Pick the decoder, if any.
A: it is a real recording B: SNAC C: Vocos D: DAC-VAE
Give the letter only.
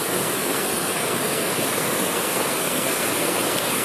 B